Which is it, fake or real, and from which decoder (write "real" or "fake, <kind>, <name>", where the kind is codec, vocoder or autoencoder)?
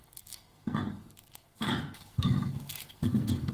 fake, codec, SNAC